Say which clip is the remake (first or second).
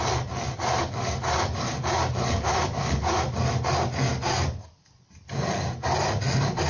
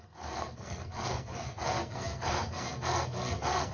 second